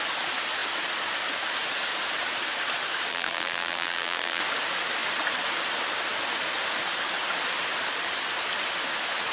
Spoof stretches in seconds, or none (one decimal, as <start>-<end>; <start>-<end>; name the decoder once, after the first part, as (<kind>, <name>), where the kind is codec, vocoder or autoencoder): 3.1-4.4 (vocoder, BigVGAN v2)